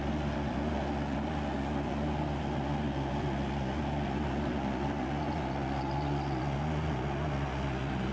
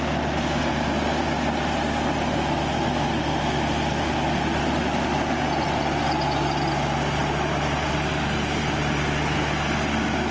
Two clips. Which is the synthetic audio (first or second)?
first